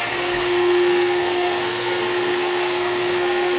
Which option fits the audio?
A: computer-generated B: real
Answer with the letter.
A